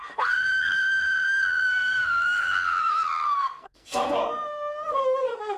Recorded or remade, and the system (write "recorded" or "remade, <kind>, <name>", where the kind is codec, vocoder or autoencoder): remade, codec, SNAC